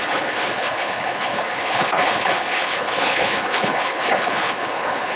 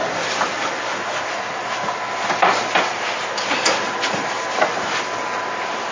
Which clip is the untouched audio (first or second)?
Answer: second